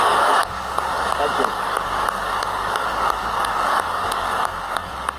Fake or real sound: fake